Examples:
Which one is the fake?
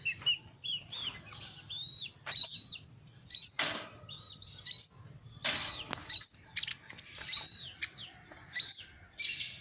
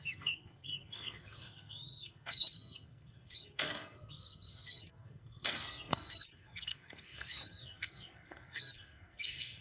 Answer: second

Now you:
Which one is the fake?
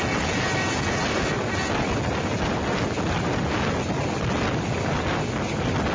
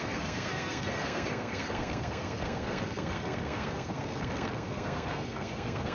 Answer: second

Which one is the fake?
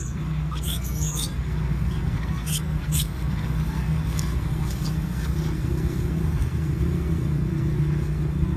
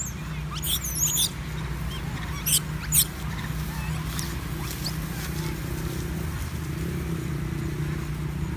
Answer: first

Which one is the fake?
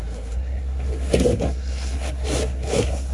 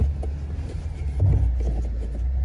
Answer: first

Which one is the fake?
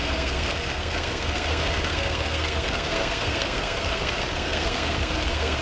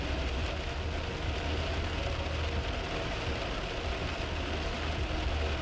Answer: first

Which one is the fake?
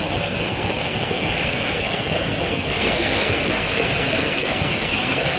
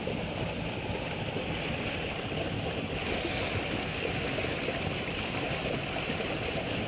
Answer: first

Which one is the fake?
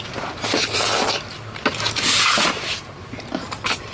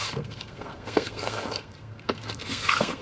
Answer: second